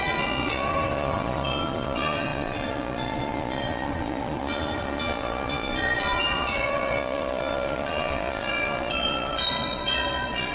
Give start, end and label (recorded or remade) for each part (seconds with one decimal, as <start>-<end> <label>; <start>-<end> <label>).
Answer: 0.0-10.5 remade

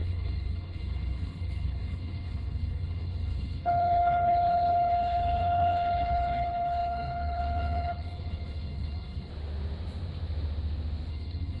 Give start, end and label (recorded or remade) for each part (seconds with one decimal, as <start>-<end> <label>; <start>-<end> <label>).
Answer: 0.0-9.3 remade; 9.3-11.1 recorded; 11.1-11.6 remade

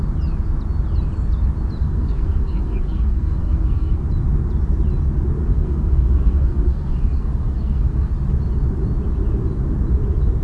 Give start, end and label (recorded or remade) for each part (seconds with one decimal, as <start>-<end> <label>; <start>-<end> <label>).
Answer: 0.0-1.8 recorded; 1.8-4.0 remade; 4.0-5.5 recorded; 5.5-8.1 remade; 8.1-10.4 recorded

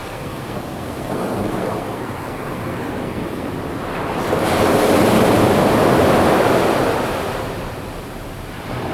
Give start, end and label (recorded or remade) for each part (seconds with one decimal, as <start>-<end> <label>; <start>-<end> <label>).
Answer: 0.0-3.5 remade; 3.5-8.9 recorded

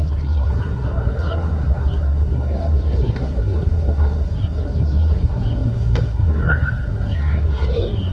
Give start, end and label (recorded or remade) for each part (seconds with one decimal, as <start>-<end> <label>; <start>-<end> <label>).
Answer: 0.0-8.1 remade

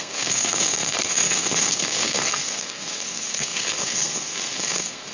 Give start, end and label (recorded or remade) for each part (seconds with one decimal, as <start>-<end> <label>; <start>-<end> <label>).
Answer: 0.0-5.1 remade

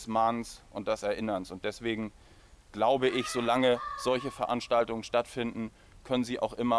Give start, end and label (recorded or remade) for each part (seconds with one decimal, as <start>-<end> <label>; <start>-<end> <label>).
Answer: 0.0-2.1 recorded; 2.1-4.8 remade; 4.8-6.8 recorded